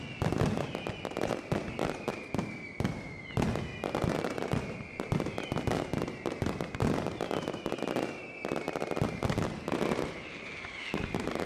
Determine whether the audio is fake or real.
real